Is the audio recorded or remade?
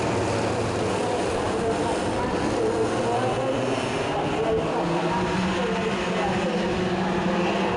recorded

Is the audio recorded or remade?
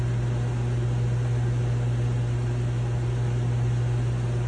recorded